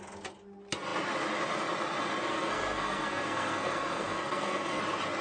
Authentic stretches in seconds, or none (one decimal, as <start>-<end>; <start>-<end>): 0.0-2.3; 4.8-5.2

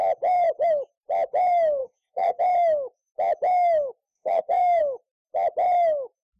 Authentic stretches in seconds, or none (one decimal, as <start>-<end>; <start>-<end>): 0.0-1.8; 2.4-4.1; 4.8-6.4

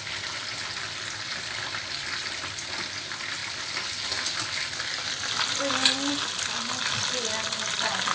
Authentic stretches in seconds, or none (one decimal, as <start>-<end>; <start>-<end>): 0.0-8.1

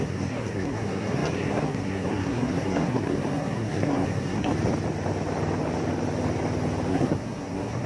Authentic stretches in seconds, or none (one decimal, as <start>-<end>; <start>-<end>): 4.5-6.9

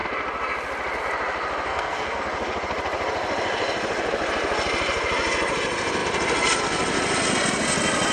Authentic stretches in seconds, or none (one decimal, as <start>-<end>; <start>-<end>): 0.0-1.7; 2.2-8.1